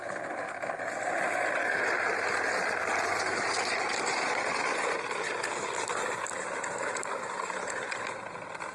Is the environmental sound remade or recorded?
recorded